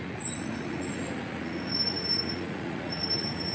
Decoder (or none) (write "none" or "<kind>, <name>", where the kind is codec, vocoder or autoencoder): vocoder, Vocos